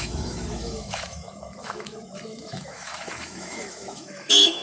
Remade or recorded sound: remade